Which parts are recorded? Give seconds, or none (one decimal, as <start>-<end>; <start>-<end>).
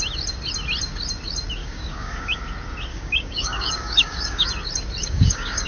0.0-1.6; 2.4-2.9; 4.5-5.0